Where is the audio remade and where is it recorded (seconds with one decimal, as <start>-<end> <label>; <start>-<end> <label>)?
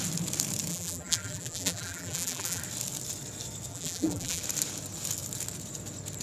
0.0-0.7 recorded; 0.7-2.6 remade; 2.6-3.7 recorded; 3.7-4.4 remade; 4.4-6.2 recorded